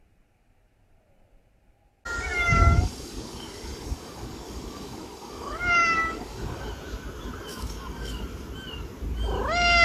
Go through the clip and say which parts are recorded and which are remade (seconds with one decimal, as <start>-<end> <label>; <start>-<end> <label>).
0.0-2.3 recorded; 2.3-6.7 remade; 6.7-7.5 recorded; 7.5-8.2 remade; 8.2-9.8 recorded